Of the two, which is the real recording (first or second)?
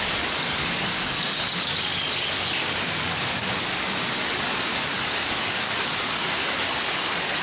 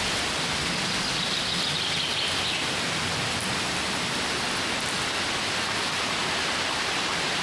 second